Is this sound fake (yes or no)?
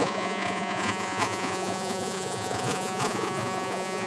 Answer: yes